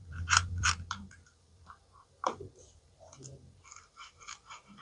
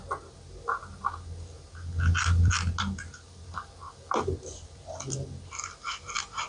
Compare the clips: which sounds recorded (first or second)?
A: second